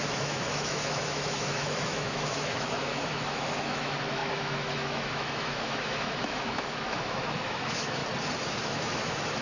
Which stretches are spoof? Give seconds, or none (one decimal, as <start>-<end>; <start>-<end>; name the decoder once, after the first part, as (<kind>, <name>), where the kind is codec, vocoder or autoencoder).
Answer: 0.0-8.0 (autoencoder, DAC-VAE); 8.6-9.4